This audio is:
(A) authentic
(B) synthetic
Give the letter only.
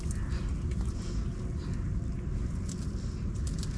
A